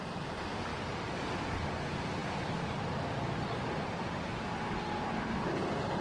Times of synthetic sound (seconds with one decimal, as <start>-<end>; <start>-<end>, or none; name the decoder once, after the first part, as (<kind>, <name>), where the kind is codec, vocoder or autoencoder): none